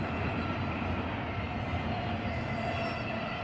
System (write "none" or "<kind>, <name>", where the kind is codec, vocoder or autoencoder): none